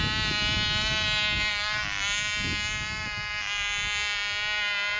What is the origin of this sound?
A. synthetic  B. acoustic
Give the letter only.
B